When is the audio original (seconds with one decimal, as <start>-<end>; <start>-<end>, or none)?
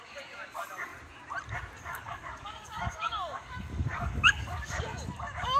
0.9-1.8